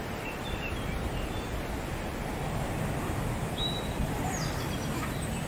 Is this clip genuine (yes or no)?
yes